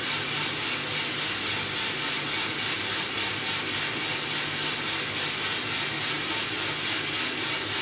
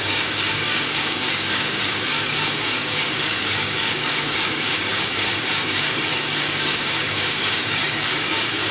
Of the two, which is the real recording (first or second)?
first